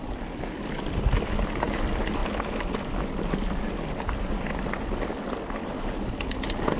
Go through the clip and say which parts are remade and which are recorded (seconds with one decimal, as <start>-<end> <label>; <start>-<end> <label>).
0.0-5.6 recorded; 5.6-6.1 remade; 6.1-6.8 recorded